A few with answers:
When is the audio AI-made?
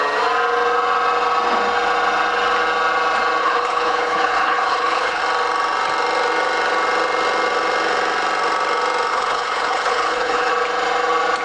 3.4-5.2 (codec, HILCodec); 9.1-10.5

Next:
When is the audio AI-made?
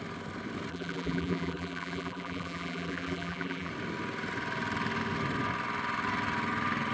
0.7-3.7 (vocoder, BigVGAN v2)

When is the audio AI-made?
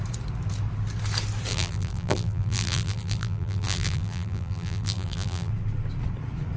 1.5-5.5 (vocoder, BigVGAN v2)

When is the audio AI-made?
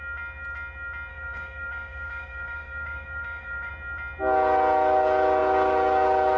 1.1-3.7 (codec, DAC)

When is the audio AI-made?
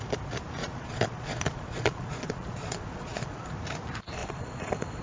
0.6-3.5 (vocoder, Vocos); 4.2-5.0